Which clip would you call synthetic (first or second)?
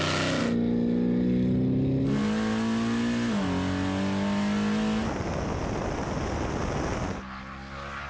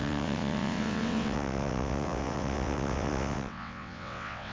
second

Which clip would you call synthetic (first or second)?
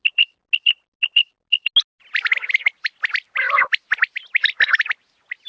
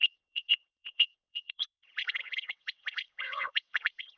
second